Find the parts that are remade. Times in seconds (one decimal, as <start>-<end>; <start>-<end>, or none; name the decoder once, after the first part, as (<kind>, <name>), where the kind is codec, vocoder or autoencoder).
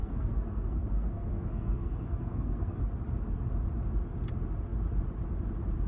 0.0-2.8 (codec, SNAC)